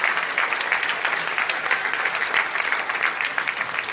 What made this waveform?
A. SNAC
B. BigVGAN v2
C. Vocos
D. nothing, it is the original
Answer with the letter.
D